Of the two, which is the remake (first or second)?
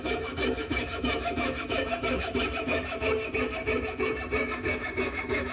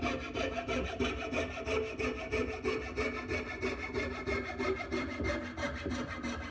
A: first